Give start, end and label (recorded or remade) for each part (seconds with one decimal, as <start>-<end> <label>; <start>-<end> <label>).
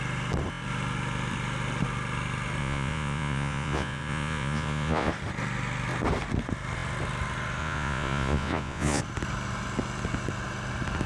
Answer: 0.0-2.6 recorded; 2.6-5.1 remade; 5.1-7.6 recorded; 7.6-9.0 remade; 9.0-11.1 recorded